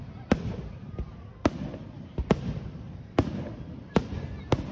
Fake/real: real